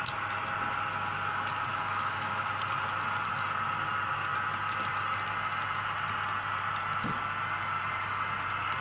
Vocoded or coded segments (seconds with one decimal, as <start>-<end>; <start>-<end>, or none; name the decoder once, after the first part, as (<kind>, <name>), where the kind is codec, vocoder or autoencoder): 1.7-2.5 (autoencoder, DAC-VAE)